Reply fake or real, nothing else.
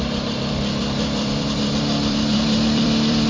fake